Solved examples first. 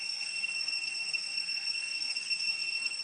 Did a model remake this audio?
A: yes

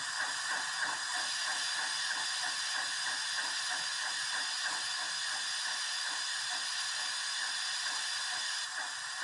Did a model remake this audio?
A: no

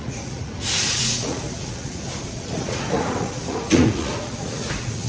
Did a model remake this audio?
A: yes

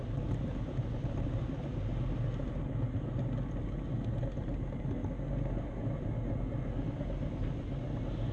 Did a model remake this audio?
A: no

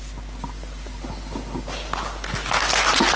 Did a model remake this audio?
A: no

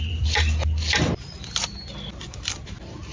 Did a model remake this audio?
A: no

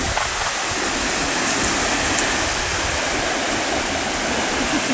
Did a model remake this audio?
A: no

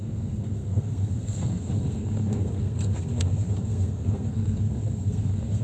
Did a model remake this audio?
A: yes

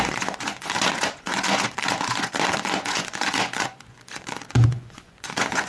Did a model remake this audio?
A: yes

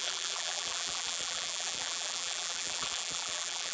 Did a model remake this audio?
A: yes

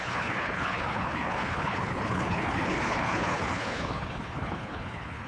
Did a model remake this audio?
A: yes